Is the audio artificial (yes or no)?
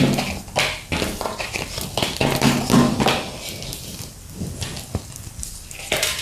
no